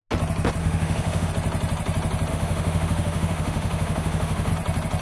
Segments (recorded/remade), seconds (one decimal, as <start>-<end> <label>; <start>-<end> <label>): 0.0-0.6 recorded; 0.6-1.3 remade; 1.3-2.3 recorded; 2.3-4.5 remade; 4.5-5.0 recorded

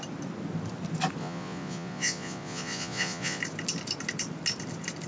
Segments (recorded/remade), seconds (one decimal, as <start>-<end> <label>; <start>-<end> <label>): 0.0-1.2 recorded; 1.2-3.4 remade; 3.4-5.1 recorded

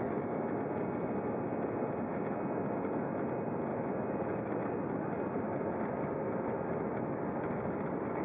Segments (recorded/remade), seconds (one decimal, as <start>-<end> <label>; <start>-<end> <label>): 0.0-8.2 recorded